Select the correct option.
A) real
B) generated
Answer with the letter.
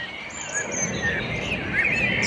A